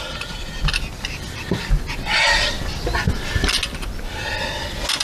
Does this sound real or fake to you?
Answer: real